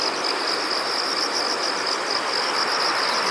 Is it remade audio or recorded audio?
recorded